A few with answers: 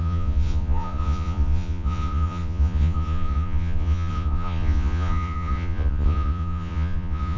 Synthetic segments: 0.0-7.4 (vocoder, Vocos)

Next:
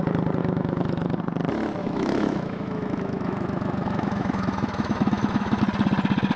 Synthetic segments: 0.4-1.2 (autoencoder, DAC-VAE); 1.8-5.6

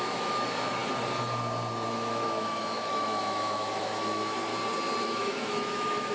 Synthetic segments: 0.0-0.8 (autoencoder, DAC-VAE); 1.9-4.5; 5.0-6.1

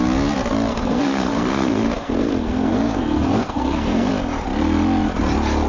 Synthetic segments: 0.7-4.1 (codec, SNAC)